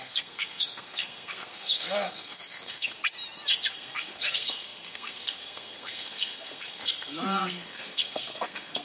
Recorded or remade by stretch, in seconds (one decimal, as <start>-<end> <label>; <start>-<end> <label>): 0.0-3.0 remade; 3.0-3.7 recorded; 3.7-8.8 remade